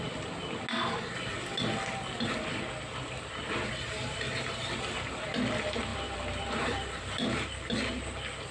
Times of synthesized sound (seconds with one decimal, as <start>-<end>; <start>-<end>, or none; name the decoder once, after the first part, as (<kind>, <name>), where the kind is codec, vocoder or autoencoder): 2.9-5.3 (vocoder, BigVGAN v2); 5.9-7.5